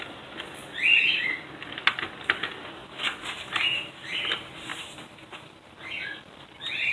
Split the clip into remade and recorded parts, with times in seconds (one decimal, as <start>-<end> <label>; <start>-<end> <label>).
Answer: 0.0-4.7 recorded; 4.7-5.7 remade; 5.7-6.9 recorded